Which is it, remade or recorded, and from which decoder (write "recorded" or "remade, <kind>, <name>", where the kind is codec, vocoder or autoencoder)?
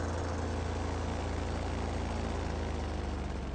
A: recorded